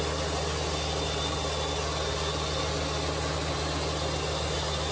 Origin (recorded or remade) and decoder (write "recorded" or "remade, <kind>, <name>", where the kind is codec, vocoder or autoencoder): recorded